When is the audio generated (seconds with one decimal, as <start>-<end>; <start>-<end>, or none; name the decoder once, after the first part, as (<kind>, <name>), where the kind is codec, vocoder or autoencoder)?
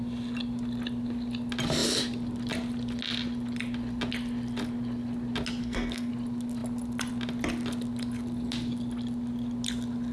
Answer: 5.6-6.1 (codec, SNAC)